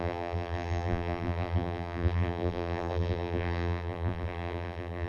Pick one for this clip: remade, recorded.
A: remade